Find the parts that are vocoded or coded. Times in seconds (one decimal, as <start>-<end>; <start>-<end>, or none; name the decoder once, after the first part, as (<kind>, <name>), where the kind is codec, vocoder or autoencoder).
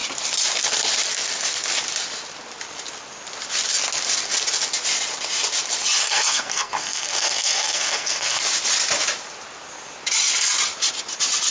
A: 6.0-8.4 (codec, SNAC)